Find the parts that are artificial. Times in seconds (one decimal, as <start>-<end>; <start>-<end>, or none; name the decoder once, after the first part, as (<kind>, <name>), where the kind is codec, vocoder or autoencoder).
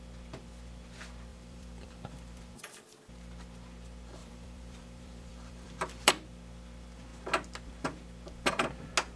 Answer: 1.3-2.5 (vocoder, BigVGAN v2); 4.2-6.1